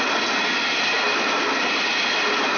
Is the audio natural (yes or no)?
yes